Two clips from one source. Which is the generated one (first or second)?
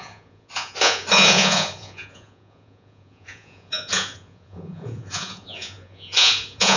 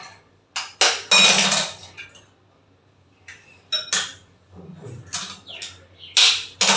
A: first